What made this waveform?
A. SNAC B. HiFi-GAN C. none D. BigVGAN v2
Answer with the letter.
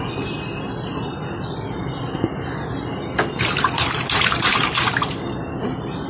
C